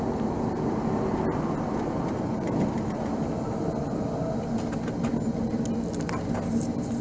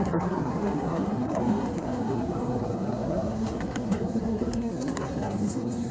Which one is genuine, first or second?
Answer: first